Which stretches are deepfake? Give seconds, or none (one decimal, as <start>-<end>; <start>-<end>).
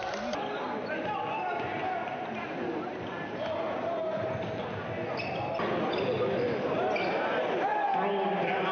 none